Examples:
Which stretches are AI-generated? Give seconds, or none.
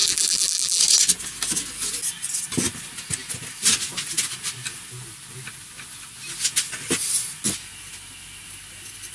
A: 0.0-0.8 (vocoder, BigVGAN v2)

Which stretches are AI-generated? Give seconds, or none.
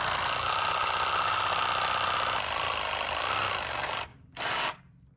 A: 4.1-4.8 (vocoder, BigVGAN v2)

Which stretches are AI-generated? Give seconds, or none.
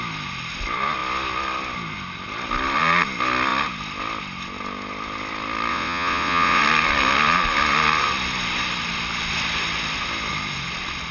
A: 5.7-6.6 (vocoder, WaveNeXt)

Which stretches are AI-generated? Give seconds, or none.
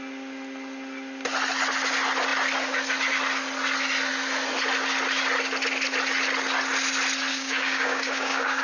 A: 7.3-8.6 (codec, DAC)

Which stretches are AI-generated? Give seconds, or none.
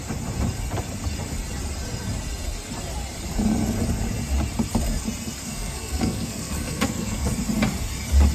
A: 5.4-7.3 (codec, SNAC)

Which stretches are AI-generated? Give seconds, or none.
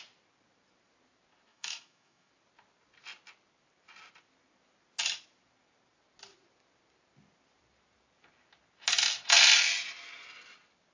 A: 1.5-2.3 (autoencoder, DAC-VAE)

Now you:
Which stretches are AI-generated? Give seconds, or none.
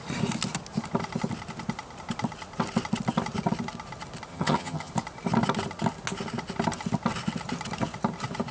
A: 4.3-4.9 (vocoder, HiFi-GAN)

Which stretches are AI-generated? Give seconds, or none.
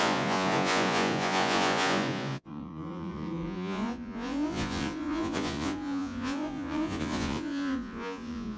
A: 0.0-8.6 (vocoder, Vocos)